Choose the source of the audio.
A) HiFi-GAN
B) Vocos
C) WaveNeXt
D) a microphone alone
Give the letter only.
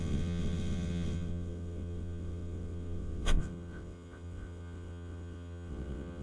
C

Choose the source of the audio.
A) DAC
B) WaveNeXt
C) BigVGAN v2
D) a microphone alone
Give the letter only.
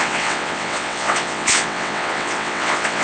B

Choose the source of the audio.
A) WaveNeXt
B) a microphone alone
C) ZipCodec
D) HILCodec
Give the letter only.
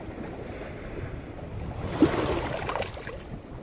B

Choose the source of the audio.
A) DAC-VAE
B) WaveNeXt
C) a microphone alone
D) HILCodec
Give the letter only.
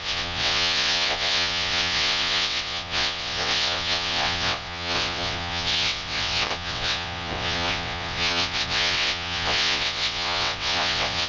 B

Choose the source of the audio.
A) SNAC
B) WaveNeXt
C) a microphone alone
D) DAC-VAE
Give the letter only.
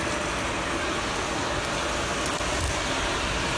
C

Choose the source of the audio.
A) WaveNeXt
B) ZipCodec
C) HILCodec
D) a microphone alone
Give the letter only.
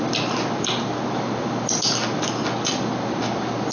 D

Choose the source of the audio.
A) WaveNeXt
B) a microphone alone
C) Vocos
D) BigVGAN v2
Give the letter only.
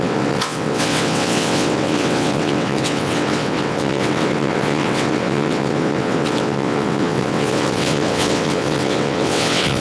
A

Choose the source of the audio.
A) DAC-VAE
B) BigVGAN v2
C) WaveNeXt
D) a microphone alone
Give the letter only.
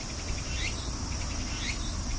D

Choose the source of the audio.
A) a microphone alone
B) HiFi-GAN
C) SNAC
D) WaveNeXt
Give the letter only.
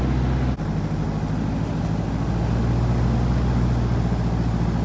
A